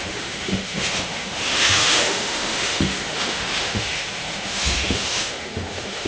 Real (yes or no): no